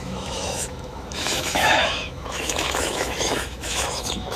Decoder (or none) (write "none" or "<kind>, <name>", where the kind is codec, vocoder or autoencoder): autoencoder, DAC-VAE